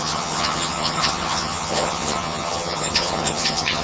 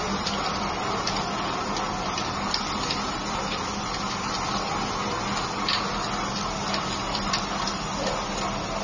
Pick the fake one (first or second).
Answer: first